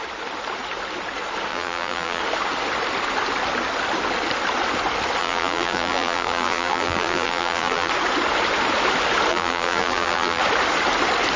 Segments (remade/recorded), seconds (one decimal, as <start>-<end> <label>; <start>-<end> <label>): 0.0-1.5 recorded; 1.5-2.2 remade; 2.2-5.2 recorded; 5.2-7.9 remade; 7.9-9.3 recorded; 9.3-10.4 remade; 10.4-11.4 recorded